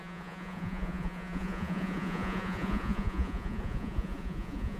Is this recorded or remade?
remade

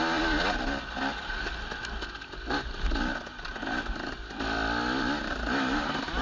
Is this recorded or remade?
recorded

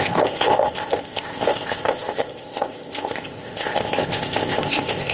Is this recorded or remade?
remade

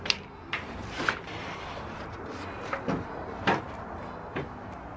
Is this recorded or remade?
recorded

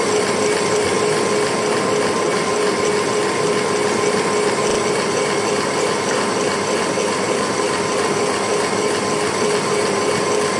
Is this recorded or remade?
recorded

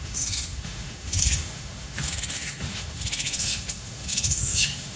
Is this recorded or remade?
remade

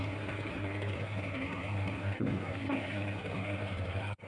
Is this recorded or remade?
remade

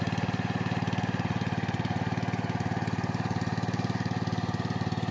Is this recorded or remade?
recorded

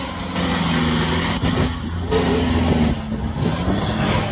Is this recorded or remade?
recorded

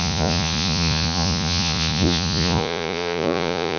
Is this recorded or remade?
remade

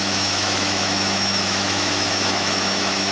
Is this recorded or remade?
remade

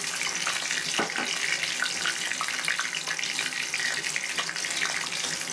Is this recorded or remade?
recorded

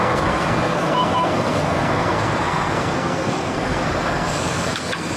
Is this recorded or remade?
remade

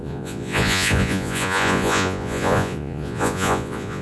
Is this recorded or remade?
remade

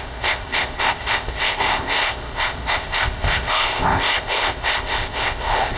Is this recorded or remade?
remade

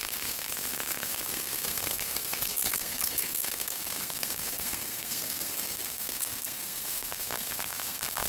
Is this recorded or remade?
remade